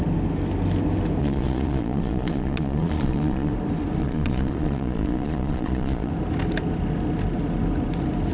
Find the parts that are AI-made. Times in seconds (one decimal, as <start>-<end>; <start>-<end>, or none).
1.2-3.5; 4.0-6.1